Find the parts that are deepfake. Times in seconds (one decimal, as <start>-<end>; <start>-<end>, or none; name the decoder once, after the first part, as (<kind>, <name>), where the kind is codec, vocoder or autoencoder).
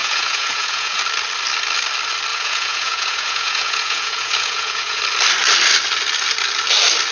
0.0-1.0 (vocoder, Vocos); 2.3-5.0